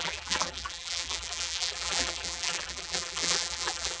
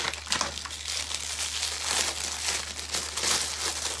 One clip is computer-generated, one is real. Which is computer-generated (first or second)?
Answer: first